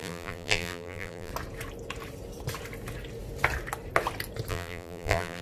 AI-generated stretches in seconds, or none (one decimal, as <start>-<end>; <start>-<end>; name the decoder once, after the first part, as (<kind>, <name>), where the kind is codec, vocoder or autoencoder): 0.0-1.3 (vocoder, BigVGAN v2); 4.5-5.4